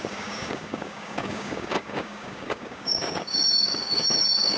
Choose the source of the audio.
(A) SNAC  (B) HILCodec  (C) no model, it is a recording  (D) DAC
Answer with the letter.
D